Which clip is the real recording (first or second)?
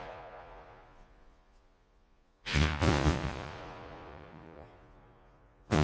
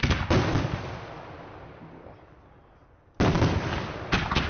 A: second